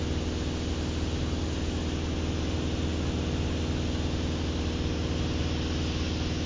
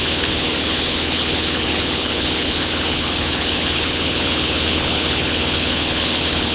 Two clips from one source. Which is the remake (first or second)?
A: second